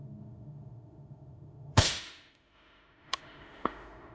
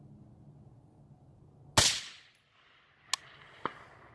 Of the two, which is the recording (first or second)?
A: second